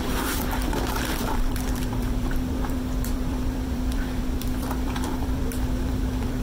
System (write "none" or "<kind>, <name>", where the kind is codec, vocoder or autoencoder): vocoder, BigVGAN v2